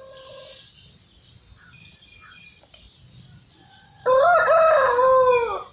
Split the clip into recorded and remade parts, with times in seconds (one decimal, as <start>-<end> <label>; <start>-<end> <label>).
0.0-5.7 recorded